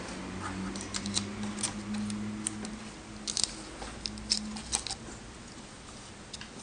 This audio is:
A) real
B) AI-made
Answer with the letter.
A